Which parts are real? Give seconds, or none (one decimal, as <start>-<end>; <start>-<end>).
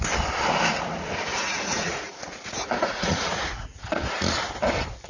0.0-1.3; 4.4-5.1